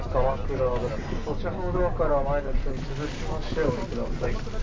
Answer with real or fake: real